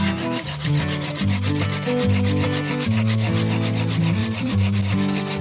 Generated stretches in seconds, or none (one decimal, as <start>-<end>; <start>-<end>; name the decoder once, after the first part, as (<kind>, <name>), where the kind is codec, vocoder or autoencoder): 4.2-4.8 (vocoder, BigVGAN v2)